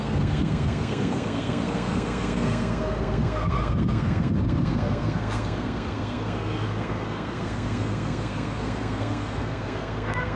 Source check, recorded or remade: remade